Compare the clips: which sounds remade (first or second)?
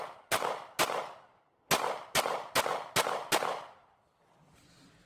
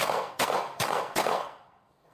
second